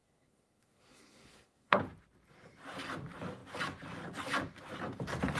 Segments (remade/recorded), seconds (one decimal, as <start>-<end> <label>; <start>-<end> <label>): 0.0-1.8 remade; 1.8-5.4 recorded